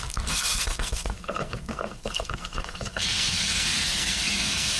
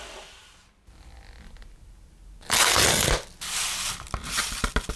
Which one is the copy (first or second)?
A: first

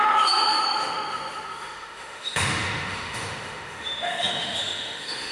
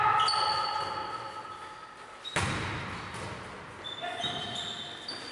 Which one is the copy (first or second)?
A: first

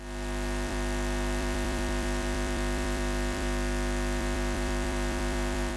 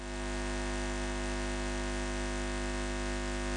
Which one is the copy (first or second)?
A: first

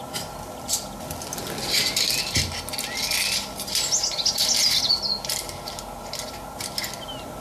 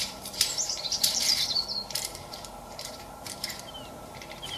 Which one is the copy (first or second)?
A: second